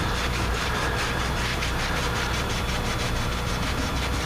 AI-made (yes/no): yes